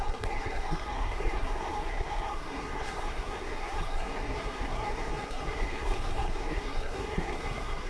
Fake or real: fake